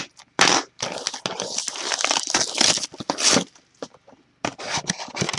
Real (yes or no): yes